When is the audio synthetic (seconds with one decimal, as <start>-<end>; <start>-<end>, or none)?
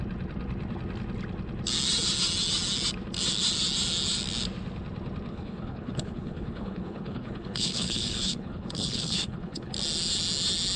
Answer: 5.3-9.7